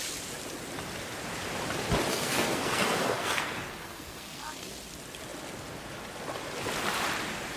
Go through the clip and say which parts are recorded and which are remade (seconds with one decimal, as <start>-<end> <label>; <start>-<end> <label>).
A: 0.0-2.1 recorded; 2.1-4.7 remade; 4.7-7.6 recorded